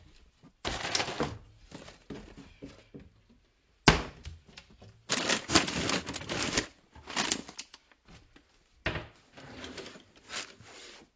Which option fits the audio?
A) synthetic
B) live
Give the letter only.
B